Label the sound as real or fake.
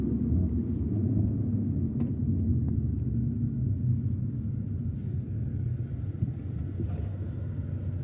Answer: real